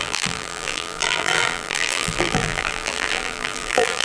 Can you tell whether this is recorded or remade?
remade